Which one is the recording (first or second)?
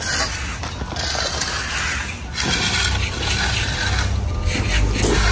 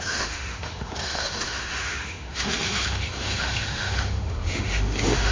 first